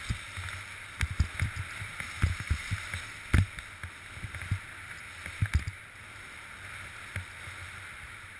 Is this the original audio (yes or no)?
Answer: yes